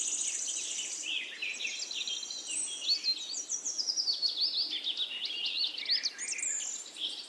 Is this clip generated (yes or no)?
no